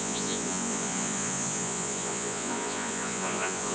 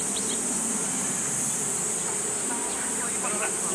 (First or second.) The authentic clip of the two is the second